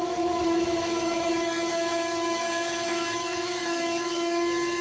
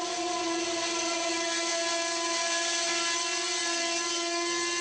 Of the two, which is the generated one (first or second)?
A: first